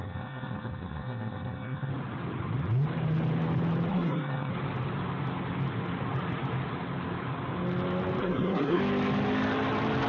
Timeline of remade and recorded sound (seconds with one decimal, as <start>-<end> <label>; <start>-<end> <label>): 0.0-1.9 remade; 1.9-3.9 recorded; 3.9-4.5 remade; 4.5-8.2 recorded; 8.2-8.8 remade; 8.8-10.1 recorded

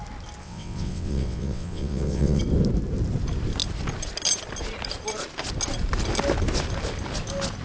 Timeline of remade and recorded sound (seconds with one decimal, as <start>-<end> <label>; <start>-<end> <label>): 0.0-0.4 recorded; 0.4-2.4 remade; 2.4-7.6 recorded